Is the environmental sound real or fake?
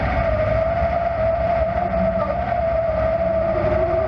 real